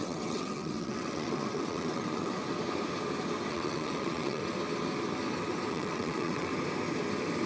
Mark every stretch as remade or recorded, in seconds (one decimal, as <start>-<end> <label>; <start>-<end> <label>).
0.0-2.4 remade; 2.4-3.5 recorded; 3.5-4.4 remade; 4.4-5.7 recorded; 5.7-6.5 remade; 6.5-7.5 recorded

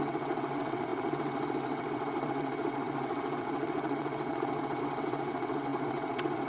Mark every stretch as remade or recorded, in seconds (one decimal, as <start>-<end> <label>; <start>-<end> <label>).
0.0-6.5 remade